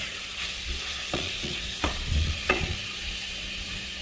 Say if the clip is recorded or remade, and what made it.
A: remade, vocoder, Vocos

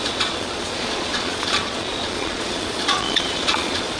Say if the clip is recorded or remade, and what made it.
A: remade, vocoder, Vocos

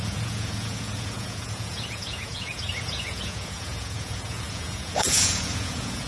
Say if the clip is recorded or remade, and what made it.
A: remade, vocoder, Vocos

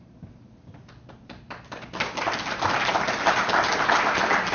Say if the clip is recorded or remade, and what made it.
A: recorded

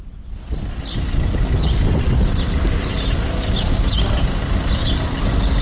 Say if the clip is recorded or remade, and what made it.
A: recorded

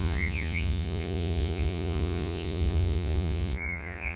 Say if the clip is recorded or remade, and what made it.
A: remade, vocoder, Vocos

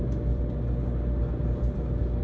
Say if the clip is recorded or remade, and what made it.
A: recorded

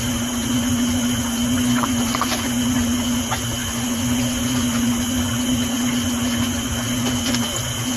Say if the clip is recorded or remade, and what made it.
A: remade, vocoder, Vocos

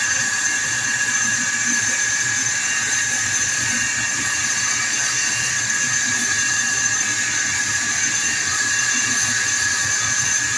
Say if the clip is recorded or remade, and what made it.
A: remade, vocoder, Vocos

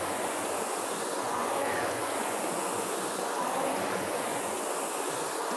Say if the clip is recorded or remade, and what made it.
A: remade, vocoder, Vocos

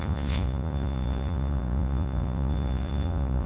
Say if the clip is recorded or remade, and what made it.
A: remade, vocoder, Vocos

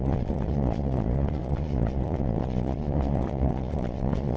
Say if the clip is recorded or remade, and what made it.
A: remade, vocoder, Vocos